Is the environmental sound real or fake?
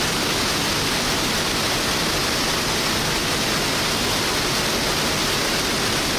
real